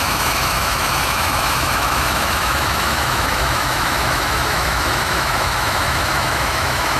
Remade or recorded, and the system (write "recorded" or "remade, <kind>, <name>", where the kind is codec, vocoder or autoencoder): remade, autoencoder, DAC-VAE